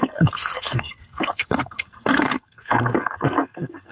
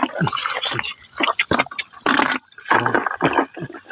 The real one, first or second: second